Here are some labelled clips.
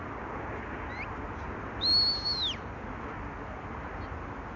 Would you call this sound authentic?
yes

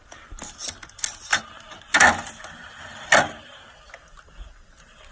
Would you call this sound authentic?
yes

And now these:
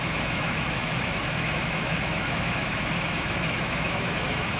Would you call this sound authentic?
no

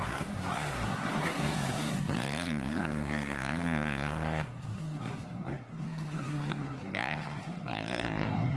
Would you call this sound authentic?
no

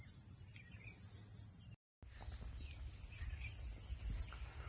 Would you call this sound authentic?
yes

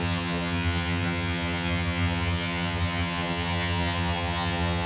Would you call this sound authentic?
no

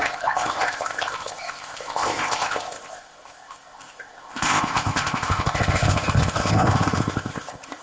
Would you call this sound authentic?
no